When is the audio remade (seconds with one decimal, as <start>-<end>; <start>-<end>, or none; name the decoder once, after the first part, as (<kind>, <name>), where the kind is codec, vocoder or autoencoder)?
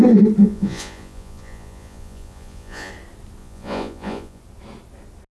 0.4-2.9 (vocoder, Vocos); 3.4-4.4